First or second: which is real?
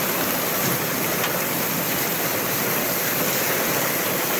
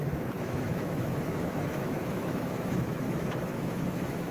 first